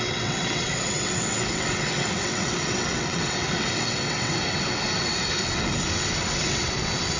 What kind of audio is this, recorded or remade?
remade